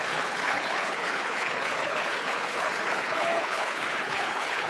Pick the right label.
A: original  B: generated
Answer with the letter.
B